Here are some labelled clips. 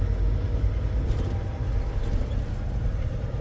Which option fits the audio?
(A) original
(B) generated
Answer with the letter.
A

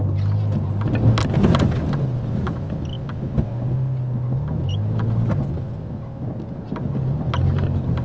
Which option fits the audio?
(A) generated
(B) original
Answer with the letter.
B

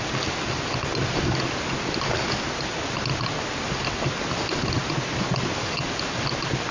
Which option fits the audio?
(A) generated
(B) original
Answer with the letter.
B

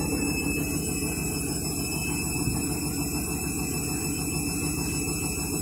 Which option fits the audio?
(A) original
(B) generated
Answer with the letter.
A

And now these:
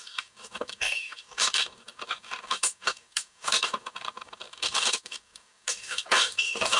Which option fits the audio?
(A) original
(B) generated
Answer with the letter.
B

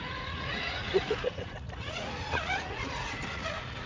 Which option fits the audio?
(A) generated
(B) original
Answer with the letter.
A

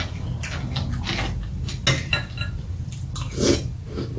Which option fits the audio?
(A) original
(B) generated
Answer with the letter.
A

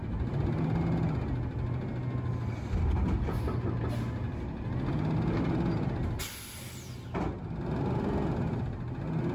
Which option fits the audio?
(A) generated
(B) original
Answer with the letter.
B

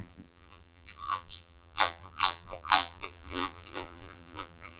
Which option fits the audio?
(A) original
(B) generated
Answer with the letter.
B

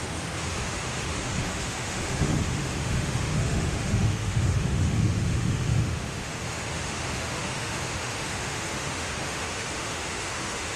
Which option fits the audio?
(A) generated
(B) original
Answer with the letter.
A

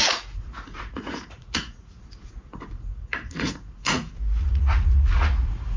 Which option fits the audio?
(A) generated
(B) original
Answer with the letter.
A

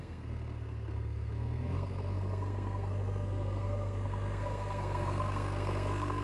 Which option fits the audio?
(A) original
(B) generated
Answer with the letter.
B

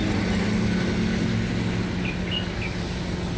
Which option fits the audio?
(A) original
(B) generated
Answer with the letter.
A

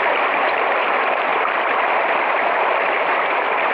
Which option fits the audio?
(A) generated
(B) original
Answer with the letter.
B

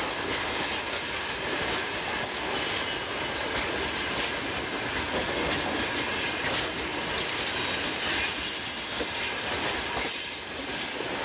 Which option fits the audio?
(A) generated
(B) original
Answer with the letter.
B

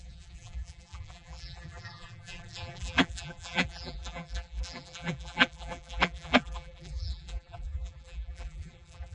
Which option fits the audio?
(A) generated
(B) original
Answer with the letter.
A